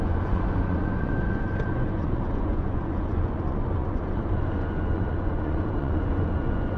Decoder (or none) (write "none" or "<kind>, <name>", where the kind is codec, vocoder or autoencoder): vocoder, Vocos